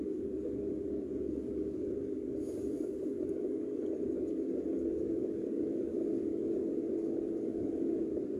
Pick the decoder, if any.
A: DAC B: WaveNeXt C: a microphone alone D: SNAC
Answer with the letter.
A